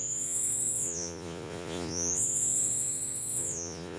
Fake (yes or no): yes